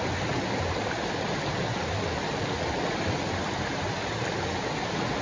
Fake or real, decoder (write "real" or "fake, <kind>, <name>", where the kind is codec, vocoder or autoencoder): real